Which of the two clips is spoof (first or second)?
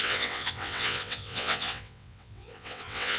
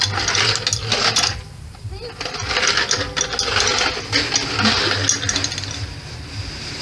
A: first